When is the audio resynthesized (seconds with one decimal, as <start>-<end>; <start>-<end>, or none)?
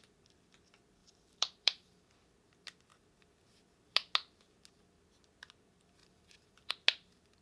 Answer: 1.0-2.1; 6.0-6.7